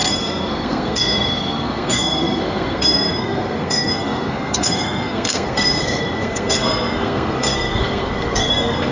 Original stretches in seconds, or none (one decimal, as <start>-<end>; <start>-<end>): none